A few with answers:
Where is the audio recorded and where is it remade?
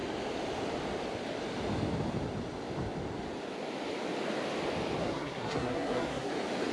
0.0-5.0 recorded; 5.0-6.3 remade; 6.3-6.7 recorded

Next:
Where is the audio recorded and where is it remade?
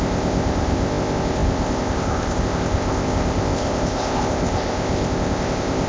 0.0-5.9 remade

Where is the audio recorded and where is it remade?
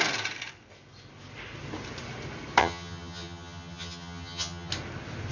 0.0-2.6 recorded; 2.6-4.7 remade; 4.7-5.3 recorded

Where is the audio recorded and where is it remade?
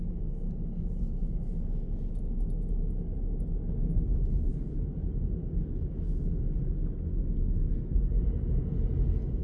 0.0-9.4 recorded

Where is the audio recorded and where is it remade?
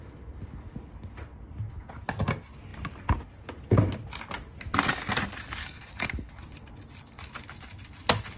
0.0-5.6 recorded; 5.6-6.3 remade; 6.3-8.4 recorded